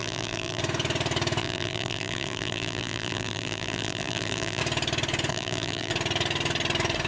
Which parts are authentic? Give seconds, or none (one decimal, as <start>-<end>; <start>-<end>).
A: 0.6-1.4; 4.6-5.3; 5.9-7.1